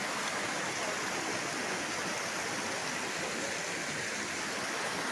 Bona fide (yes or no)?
yes